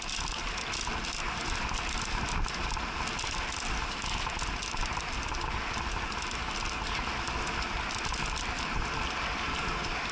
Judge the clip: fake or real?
real